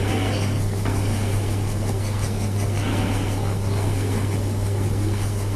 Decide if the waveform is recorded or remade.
remade